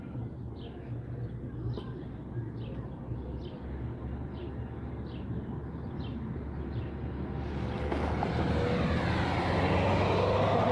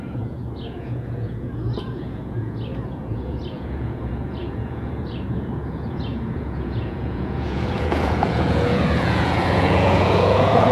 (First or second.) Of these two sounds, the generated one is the second